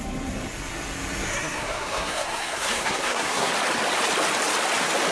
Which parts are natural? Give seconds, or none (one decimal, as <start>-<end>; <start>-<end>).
0.0-1.3; 3.5-5.1